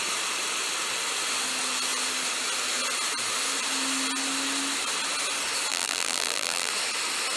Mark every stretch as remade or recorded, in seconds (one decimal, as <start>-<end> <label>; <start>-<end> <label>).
0.0-5.7 recorded; 5.7-6.7 remade; 6.7-7.4 recorded